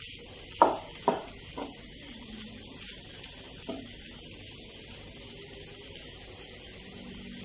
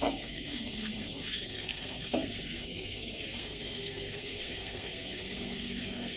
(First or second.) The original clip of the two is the first